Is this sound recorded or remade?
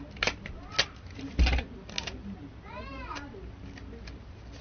recorded